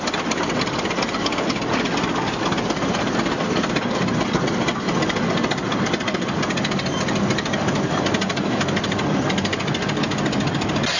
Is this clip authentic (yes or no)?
yes